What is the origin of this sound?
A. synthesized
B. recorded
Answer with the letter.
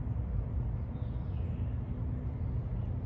B